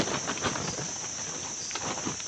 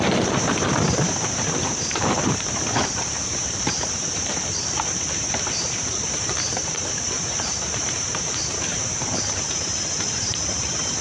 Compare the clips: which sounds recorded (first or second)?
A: first